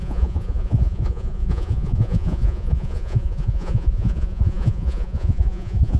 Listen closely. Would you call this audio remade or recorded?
remade